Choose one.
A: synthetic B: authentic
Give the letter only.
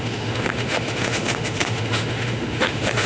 A